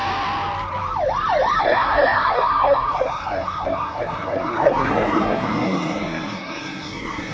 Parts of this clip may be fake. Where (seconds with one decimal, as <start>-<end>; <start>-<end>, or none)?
1.6-7.3